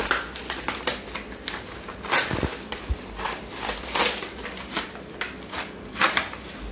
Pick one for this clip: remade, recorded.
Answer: recorded